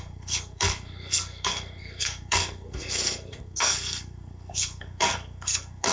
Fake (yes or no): yes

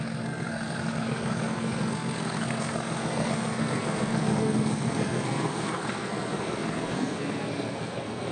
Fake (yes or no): yes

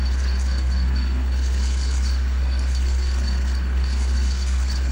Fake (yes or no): yes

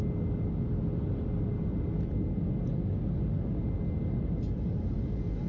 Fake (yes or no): no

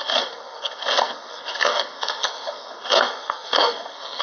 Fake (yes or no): yes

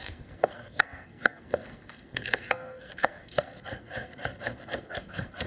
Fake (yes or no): yes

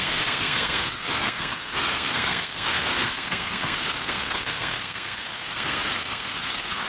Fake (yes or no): yes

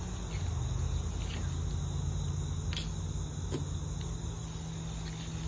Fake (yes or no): no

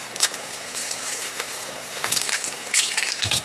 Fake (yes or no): yes